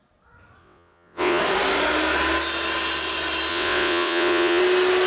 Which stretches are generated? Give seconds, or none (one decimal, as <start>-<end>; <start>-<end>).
0.6-1.4; 3.5-4.6